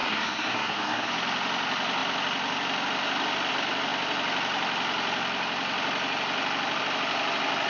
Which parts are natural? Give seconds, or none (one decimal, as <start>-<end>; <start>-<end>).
1.1-7.7